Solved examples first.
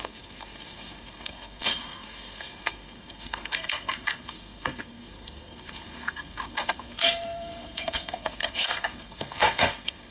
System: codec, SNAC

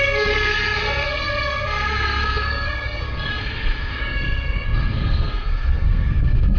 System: codec, SNAC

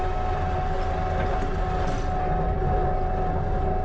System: none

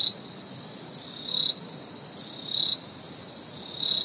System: none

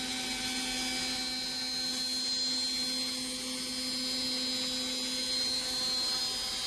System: none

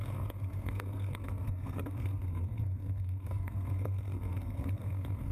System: codec, SNAC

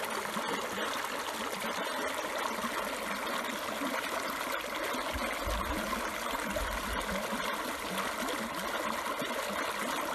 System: none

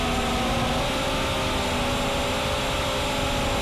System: none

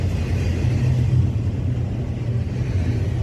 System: none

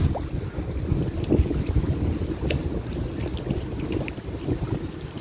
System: none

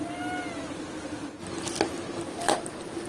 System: none